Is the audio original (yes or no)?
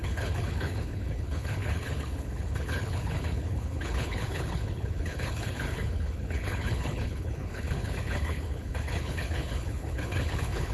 no